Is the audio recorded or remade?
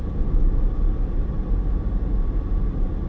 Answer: remade